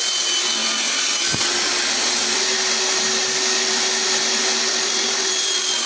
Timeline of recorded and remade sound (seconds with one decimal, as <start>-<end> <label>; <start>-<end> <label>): 0.0-5.9 recorded